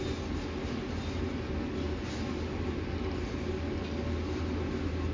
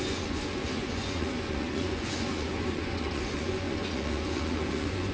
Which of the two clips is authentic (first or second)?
first